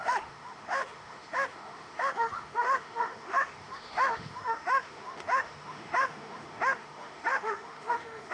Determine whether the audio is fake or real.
fake